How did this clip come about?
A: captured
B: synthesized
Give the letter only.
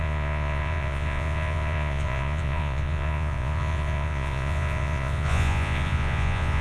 B